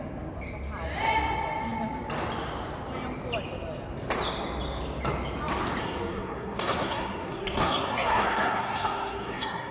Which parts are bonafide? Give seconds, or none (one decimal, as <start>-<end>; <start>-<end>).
0.0-5.8

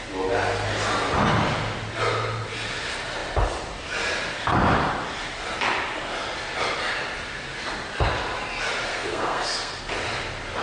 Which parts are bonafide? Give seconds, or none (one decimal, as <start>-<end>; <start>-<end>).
0.0-8.9; 9.8-10.6

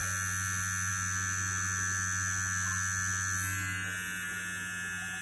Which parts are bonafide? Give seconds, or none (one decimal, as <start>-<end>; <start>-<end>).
0.0-5.2

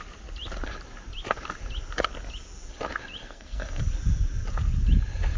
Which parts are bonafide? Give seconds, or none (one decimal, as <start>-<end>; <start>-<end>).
0.0-3.2; 3.8-5.4

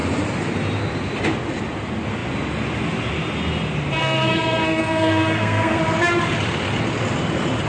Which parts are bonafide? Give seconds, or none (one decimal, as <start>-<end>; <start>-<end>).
0.0-4.0; 5.8-7.7

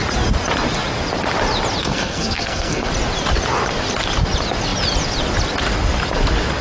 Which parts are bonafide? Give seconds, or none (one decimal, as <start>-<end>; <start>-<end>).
0.0-1.8; 2.9-6.6

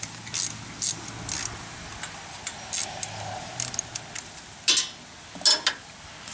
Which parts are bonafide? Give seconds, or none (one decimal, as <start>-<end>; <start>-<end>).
0.0-6.3

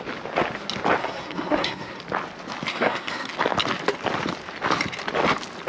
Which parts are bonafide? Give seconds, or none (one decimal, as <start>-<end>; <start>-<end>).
0.0-1.0; 2.0-2.7; 3.3-5.7